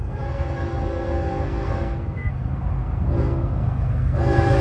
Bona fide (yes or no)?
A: no